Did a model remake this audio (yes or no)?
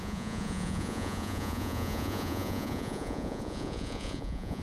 yes